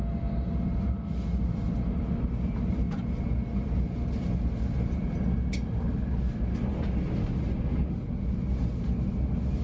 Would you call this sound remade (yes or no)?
no